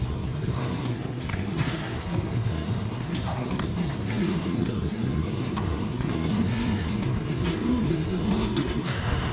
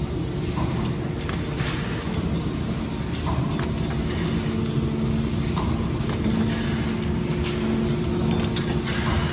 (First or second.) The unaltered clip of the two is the second